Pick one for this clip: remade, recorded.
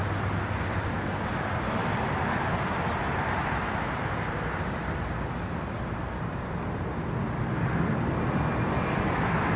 recorded